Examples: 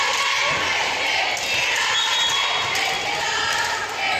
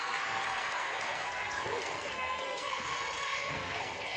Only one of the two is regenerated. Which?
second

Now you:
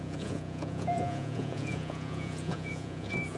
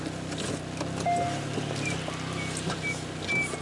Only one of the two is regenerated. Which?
first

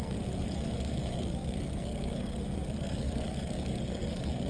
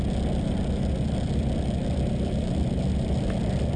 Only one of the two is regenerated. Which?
first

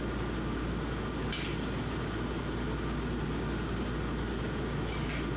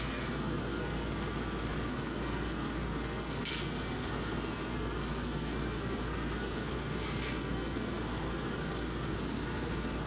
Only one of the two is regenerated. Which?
second